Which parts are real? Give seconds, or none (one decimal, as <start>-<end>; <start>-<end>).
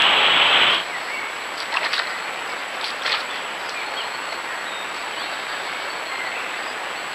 0.0-2.6; 3.9-7.1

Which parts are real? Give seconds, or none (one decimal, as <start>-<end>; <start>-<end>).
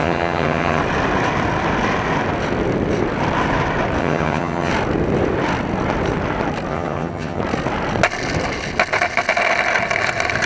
0.8-4.0; 4.7-6.7; 7.4-10.5